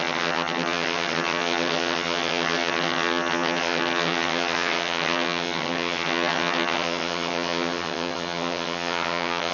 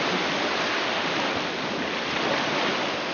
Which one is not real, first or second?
first